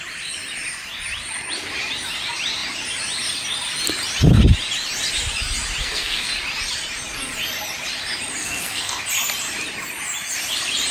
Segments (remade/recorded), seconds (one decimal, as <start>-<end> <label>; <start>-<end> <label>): 0.0-5.8 recorded; 5.8-6.3 remade; 6.3-8.4 recorded; 8.4-9.0 remade; 9.0-10.9 recorded